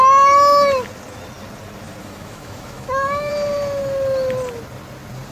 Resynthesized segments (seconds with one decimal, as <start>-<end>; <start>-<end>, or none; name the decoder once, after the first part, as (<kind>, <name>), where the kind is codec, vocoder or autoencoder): 2.0-3.3 (autoencoder, DAC-VAE)